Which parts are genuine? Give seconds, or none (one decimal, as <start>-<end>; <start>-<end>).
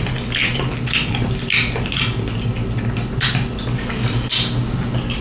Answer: 0.0-5.2